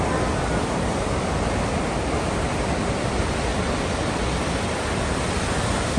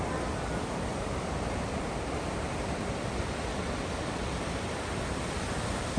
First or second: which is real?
first